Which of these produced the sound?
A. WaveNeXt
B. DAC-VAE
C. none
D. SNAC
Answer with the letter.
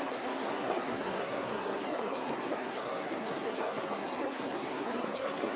D